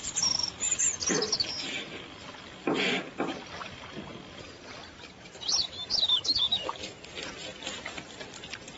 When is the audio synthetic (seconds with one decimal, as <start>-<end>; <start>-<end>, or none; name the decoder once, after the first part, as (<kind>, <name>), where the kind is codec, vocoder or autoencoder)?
none